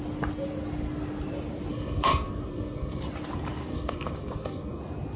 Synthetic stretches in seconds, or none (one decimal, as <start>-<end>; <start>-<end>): 1.7-3.0; 3.7-4.8